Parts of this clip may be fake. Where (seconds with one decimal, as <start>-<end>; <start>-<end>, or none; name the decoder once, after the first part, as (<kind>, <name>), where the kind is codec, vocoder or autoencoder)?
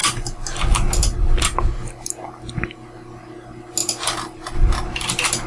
none